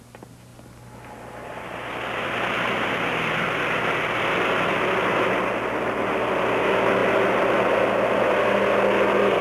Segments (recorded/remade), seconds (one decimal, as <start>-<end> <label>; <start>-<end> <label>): 0.0-9.4 recorded